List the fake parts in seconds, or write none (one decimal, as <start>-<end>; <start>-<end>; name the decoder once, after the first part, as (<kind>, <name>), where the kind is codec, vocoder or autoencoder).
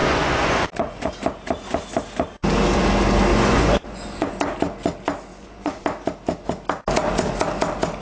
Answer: 0.0-1.1 (vocoder, Vocos); 3.3-4.4; 5.3-5.8